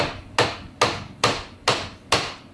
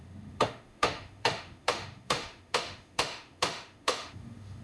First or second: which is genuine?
first